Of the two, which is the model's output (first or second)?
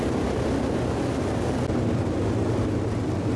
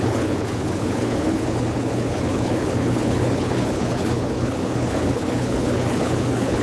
second